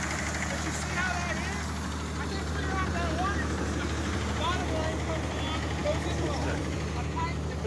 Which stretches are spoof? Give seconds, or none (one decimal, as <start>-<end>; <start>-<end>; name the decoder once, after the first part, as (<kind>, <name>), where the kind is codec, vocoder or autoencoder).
none